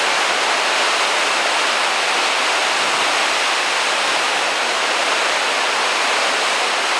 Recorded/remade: recorded